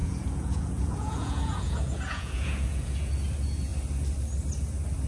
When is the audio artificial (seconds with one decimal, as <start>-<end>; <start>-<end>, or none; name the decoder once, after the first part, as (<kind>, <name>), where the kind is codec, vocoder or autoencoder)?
0.0-3.1 (vocoder, Vocos)